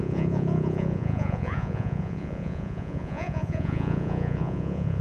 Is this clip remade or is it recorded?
remade